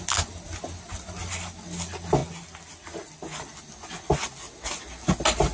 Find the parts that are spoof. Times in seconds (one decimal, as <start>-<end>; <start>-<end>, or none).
none